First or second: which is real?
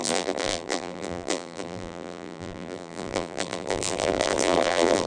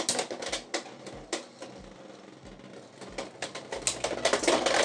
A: second